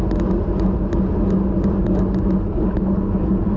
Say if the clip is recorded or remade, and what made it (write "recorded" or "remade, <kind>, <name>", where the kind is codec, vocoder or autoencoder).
recorded